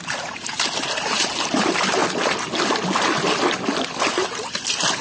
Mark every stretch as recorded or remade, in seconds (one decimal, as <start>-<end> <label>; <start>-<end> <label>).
0.0-2.0 remade; 2.0-4.1 recorded; 4.1-5.0 remade